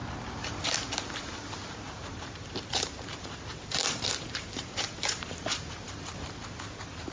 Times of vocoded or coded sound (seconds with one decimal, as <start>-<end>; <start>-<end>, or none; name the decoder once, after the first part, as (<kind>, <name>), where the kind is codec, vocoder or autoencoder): 2.7-7.1 (vocoder, BigVGAN v2)